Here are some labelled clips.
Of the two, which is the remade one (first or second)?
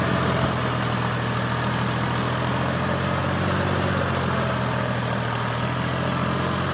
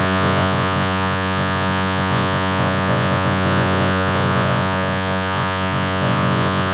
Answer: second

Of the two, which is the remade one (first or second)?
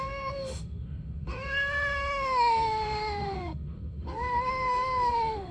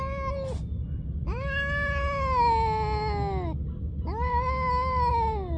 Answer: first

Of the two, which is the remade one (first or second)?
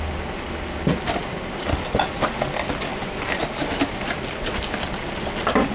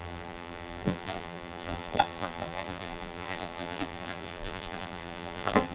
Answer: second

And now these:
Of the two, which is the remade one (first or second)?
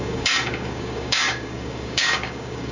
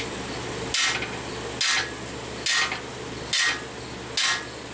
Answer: first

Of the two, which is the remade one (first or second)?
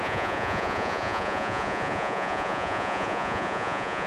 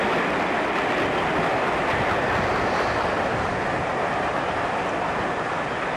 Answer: first